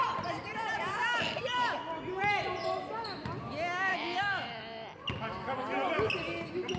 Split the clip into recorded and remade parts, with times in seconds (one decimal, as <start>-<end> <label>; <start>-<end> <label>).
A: 0.0-3.9 recorded; 3.9-4.6 remade; 4.6-6.8 recorded